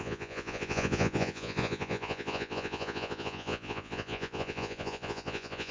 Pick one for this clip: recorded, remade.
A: remade